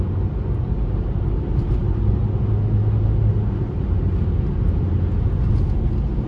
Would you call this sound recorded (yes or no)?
yes